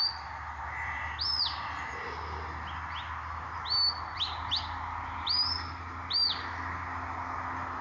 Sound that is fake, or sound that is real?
real